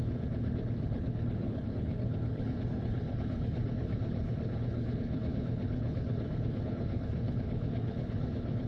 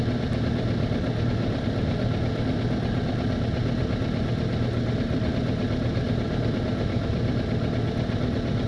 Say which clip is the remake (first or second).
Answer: first